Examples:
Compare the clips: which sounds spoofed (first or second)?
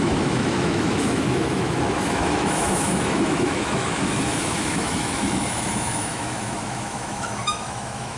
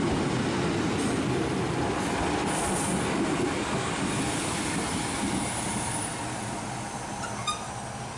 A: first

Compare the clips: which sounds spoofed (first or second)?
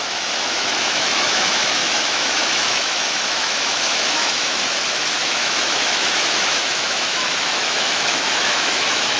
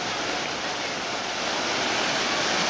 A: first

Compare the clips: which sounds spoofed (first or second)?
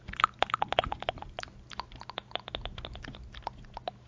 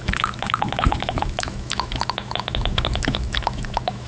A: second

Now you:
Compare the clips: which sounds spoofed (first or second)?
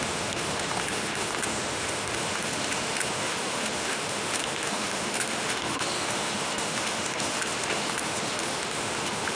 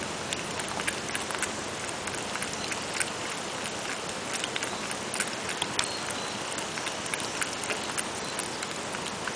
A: first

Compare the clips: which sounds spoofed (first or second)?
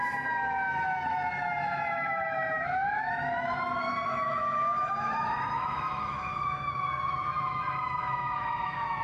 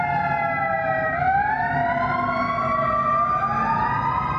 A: first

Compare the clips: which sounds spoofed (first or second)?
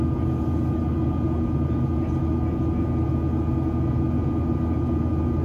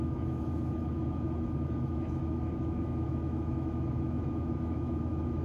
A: second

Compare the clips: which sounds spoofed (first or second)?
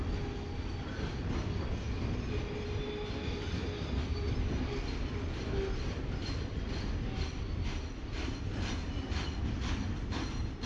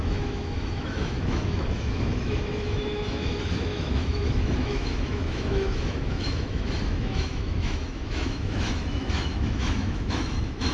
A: second